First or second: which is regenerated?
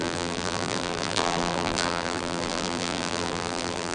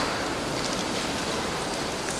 first